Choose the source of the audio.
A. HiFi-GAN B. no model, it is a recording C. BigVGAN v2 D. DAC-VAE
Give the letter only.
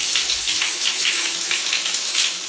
D